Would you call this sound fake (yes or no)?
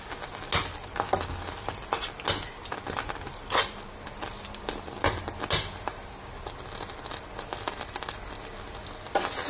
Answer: no